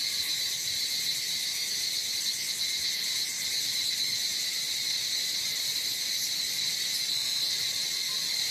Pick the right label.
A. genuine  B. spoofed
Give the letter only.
A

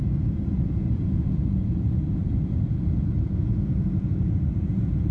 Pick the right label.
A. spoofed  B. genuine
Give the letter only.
A